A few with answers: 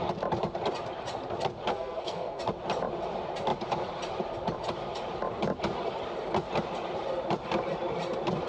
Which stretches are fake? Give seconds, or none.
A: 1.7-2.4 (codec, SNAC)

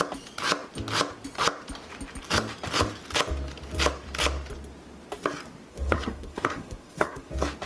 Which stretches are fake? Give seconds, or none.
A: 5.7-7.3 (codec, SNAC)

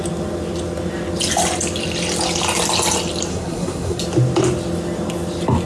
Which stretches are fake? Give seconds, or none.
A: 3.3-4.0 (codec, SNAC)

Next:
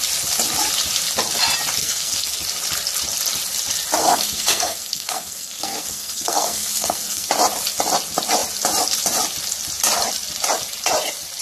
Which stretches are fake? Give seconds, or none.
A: 1.8-2.4 (codec, SNAC); 4.0-7.3

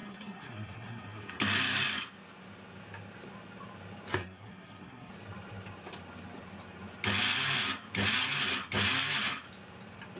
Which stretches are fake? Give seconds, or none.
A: 0.0-1.4 (codec, SNAC); 4.2-5.1